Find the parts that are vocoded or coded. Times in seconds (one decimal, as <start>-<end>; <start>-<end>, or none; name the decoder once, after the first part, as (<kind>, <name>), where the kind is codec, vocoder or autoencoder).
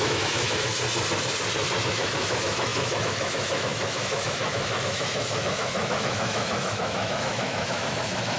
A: 0.0-0.7 (autoencoder, DAC-VAE); 1.9-8.4